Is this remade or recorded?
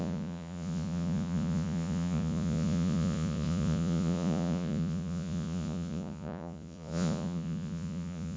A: remade